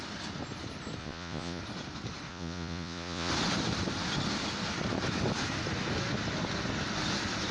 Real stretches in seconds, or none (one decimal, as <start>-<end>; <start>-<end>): 0.0-1.0; 1.6-2.3; 3.3-7.5